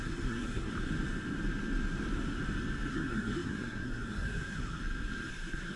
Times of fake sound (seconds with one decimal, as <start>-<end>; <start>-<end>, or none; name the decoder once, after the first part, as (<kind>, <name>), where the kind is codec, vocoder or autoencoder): 0.0-0.7 (codec, SNAC); 2.9-4.8; 5.3-5.8